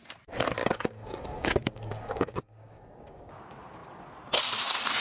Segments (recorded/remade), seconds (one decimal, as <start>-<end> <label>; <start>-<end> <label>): 0.0-0.6 recorded; 0.6-3.4 remade; 3.4-5.0 recorded